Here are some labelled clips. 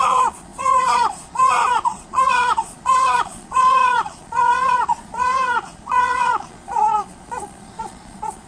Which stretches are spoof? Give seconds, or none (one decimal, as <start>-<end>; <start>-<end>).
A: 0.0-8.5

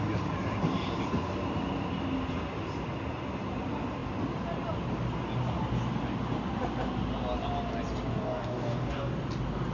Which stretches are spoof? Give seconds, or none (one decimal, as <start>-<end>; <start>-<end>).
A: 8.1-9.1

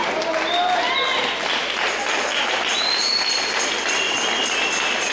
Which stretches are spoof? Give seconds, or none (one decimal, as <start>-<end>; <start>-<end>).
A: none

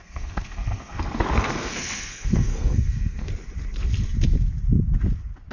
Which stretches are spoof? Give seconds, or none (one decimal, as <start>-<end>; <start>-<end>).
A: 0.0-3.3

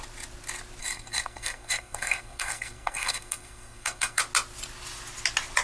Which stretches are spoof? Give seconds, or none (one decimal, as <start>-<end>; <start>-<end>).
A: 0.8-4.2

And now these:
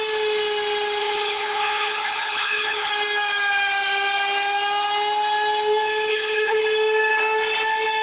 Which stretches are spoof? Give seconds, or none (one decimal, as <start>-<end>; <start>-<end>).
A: 1.0-2.9; 6.1-6.6